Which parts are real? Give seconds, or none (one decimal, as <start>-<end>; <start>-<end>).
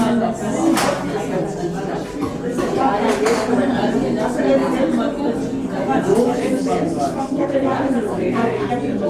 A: 0.0-6.1; 8.7-9.1